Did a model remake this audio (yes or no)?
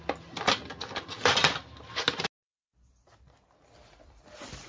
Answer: no